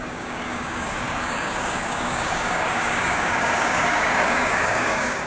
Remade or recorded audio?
remade